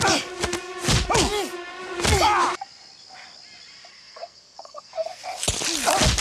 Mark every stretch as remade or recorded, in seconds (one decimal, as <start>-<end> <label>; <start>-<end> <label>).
0.0-3.9 recorded; 3.9-5.2 remade; 5.2-6.2 recorded